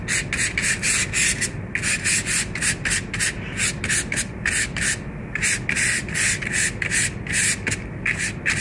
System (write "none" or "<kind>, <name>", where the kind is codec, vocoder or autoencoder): none